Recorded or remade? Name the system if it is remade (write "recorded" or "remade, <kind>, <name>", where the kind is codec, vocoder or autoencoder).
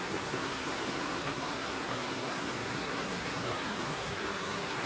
remade, codec, SNAC